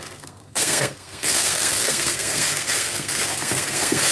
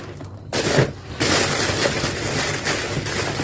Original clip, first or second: second